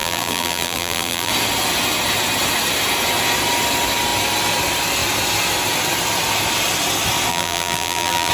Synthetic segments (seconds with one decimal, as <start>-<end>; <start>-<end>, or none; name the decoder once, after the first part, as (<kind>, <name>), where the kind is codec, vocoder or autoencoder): 0.0-1.3 (vocoder, BigVGAN v2); 7.3-8.3

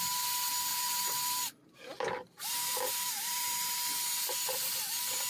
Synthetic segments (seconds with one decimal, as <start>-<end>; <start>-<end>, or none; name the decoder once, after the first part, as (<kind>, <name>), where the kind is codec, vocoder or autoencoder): 0.7-3.9 (vocoder, BigVGAN v2)

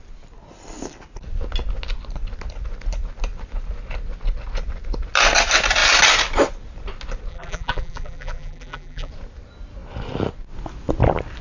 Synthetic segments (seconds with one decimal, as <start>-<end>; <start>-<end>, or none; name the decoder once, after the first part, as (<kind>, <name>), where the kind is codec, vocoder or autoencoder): 7.3-9.1 (vocoder, BigVGAN v2)

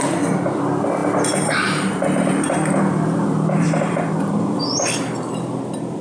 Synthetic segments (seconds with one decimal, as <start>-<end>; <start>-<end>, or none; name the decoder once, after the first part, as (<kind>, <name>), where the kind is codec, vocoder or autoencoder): 1.0-4.6 (vocoder, BigVGAN v2)

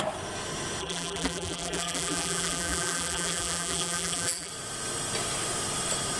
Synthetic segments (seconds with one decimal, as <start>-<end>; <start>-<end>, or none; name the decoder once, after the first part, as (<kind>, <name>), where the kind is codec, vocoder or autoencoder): 0.8-4.5 (vocoder, BigVGAN v2)

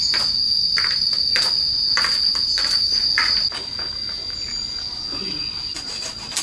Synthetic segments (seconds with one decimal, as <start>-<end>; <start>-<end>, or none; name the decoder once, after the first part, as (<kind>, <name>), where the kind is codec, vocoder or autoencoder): 0.7-1.4 (vocoder, BigVGAN v2)

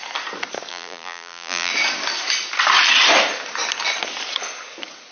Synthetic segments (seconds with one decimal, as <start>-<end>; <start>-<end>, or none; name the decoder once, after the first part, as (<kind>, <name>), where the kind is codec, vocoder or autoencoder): 0.7-1.7 (vocoder, BigVGAN v2)

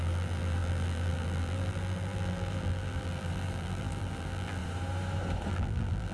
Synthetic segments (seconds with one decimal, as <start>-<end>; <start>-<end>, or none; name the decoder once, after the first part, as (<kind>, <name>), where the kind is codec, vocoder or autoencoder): 0.0-4.6 (vocoder, BigVGAN v2); 5.5-6.1